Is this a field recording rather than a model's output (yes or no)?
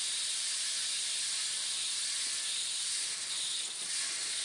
yes